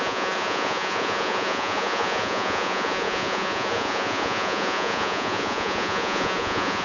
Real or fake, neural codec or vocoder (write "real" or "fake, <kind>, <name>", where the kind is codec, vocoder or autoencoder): fake, vocoder, Vocos